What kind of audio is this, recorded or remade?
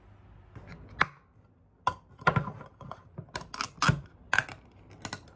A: recorded